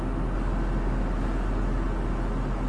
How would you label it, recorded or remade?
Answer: recorded